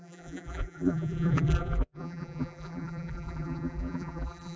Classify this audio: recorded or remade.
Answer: remade